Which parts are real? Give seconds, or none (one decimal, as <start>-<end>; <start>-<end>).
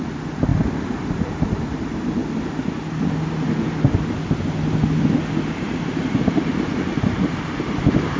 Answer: 0.5-1.1; 2.2-5.5